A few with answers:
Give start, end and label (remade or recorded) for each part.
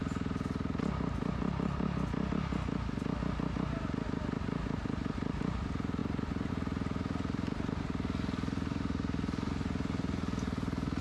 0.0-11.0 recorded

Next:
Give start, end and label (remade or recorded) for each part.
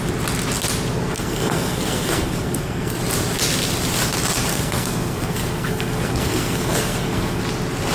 0.0-0.9 recorded; 0.9-3.0 remade; 3.0-4.5 recorded; 4.5-7.4 remade; 7.4-7.9 recorded